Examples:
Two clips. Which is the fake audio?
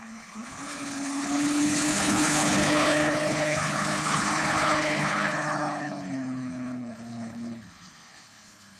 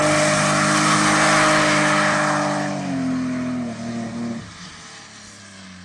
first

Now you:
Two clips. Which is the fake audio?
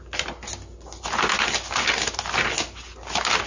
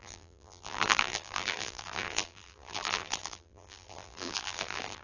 second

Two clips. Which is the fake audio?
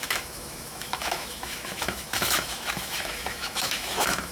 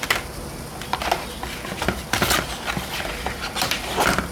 first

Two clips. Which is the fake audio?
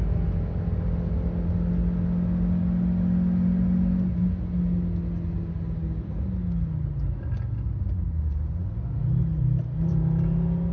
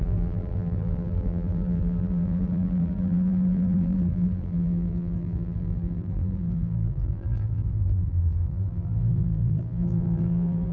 second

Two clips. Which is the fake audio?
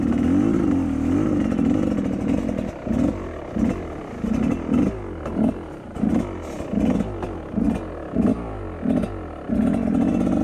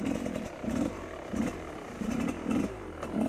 second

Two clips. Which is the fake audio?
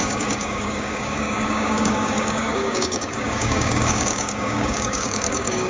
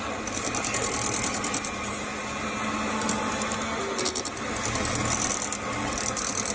first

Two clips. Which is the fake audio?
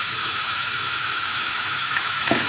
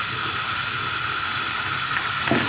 first